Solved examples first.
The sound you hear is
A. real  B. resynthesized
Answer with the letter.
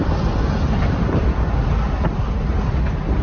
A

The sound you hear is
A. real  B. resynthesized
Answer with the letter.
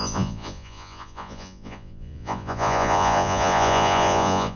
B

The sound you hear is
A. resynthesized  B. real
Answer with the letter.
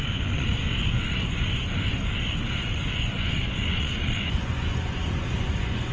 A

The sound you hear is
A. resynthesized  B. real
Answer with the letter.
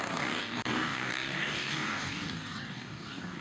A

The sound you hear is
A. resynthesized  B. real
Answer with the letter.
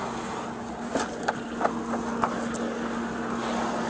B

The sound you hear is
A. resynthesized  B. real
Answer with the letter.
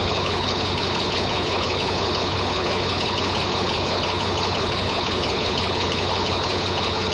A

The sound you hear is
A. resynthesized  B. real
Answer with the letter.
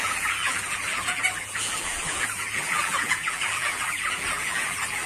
A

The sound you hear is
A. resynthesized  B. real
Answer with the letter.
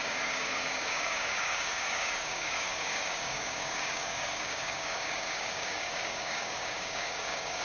A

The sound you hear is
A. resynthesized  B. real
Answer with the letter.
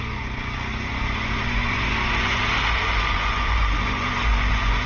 A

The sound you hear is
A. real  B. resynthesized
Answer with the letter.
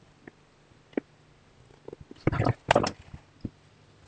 A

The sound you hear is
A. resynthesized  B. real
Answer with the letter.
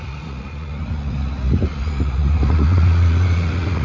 A